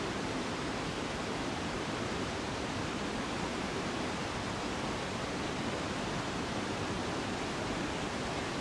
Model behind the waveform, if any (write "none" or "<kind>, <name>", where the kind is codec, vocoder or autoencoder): none